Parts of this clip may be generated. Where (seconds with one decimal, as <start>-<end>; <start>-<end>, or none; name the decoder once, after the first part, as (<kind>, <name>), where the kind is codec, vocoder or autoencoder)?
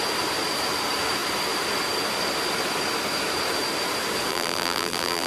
4.3-5.3 (vocoder, BigVGAN v2)